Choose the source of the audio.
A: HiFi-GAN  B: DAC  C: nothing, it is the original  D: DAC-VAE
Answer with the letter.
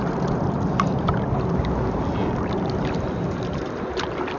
C